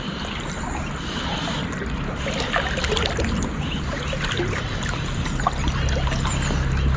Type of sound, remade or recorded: recorded